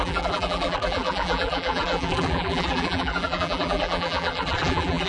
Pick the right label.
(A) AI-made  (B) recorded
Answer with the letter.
A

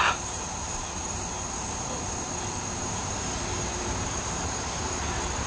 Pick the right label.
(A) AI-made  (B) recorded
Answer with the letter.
A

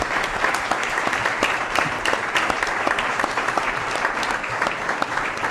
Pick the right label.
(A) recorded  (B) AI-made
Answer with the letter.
B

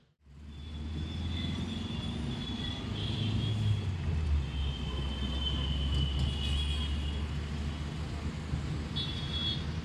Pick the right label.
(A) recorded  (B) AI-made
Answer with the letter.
A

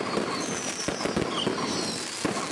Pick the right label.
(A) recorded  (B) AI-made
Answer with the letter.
A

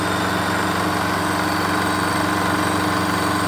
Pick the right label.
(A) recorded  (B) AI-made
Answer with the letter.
A